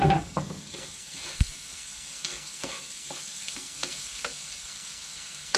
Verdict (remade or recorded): remade